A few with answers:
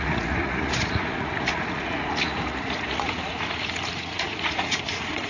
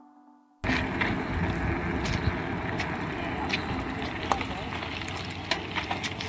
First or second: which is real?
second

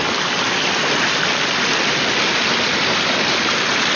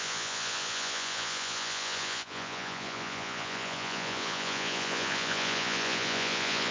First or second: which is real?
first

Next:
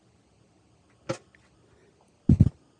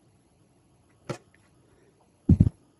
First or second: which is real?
first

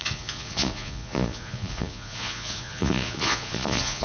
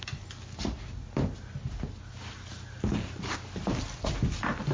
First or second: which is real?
second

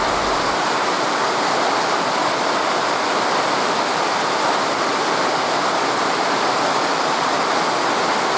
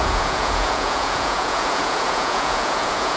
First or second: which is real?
first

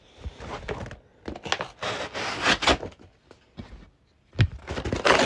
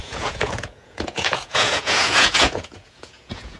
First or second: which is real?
first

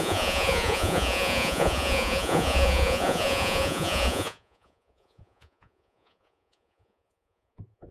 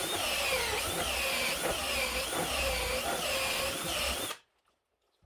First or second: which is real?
second